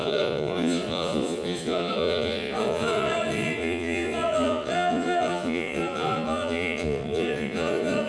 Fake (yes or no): yes